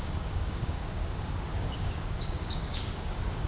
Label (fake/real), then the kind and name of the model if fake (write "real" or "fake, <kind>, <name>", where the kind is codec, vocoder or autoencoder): fake, codec, DAC